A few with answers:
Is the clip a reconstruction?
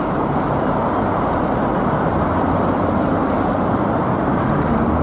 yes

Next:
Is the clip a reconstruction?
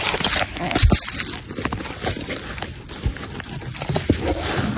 yes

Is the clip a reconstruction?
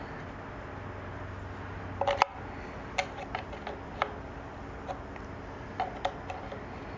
no